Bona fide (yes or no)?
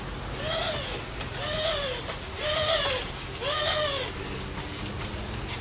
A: yes